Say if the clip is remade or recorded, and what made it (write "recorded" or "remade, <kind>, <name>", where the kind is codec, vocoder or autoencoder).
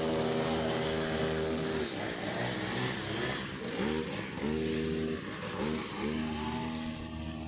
recorded